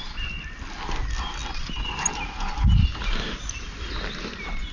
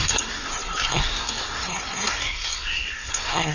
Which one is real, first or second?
first